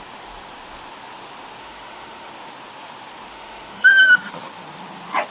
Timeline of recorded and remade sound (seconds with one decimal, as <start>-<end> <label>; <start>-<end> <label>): 0.0-1.6 recorded; 1.6-2.3 remade; 2.3-3.3 recorded; 3.3-4.3 remade; 4.3-5.3 recorded